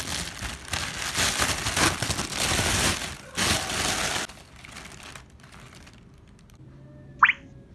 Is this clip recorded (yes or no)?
yes